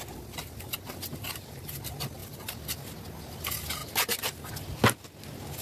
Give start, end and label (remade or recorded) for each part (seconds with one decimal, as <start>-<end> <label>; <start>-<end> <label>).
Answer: 0.0-1.1 recorded; 1.1-1.7 remade; 1.7-2.2 recorded; 2.2-2.9 remade; 2.9-3.8 recorded; 3.8-4.5 remade; 4.5-5.6 recorded